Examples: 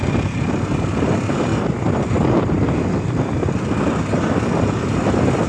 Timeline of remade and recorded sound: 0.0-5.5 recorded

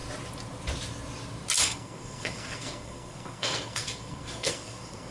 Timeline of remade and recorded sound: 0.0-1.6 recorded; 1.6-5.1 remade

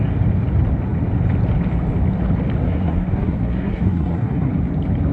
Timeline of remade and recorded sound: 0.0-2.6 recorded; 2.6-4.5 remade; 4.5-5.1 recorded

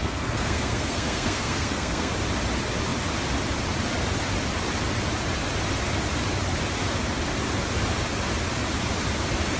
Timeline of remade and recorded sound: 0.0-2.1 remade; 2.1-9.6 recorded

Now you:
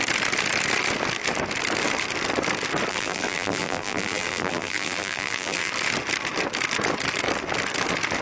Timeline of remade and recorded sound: 0.0-2.9 recorded; 2.9-5.7 remade; 5.7-8.2 recorded